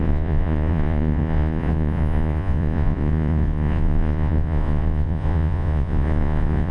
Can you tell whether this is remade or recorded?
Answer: remade